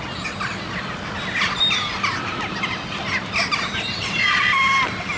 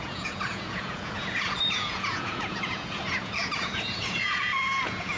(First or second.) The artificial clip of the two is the second